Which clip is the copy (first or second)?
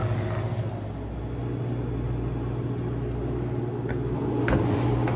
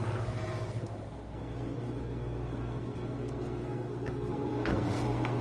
second